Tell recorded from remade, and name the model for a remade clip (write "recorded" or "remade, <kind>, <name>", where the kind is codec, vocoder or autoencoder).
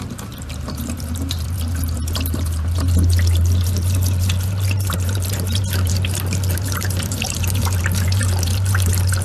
remade, vocoder, BigVGAN v2